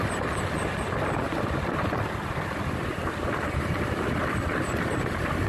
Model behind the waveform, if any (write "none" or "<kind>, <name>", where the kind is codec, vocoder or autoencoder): none